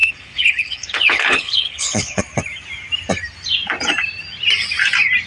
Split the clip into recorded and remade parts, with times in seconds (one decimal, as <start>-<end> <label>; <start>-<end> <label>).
0.0-2.2 remade; 2.2-5.3 recorded